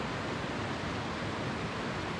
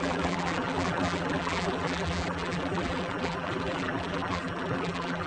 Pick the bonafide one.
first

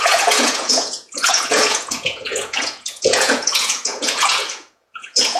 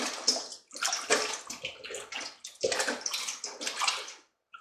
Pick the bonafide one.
second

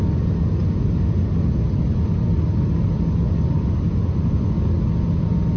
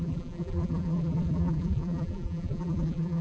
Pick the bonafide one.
first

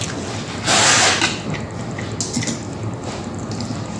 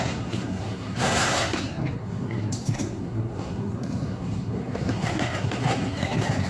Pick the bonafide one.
first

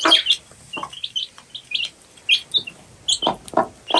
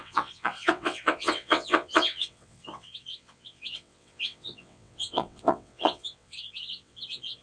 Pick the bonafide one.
first